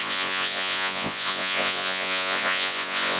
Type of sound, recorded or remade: remade